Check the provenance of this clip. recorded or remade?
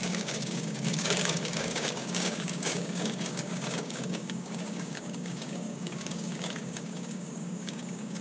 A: remade